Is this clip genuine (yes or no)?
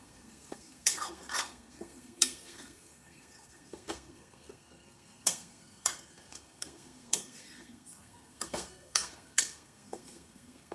no